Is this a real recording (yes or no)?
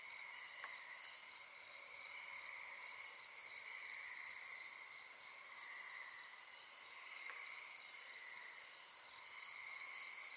yes